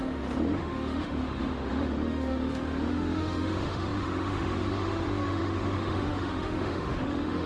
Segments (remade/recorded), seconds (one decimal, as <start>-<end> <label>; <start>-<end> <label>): 0.0-7.5 remade